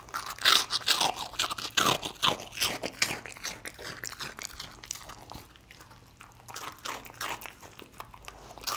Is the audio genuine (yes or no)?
yes